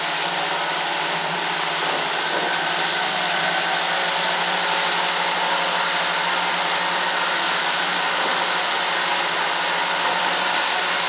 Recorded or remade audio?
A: recorded